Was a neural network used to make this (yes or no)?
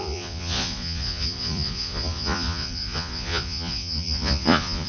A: yes